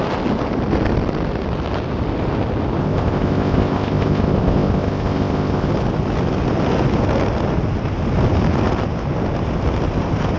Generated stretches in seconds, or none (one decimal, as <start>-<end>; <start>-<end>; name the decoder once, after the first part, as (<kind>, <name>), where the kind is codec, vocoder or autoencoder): 2.8-5.7 (codec, ZipCodec)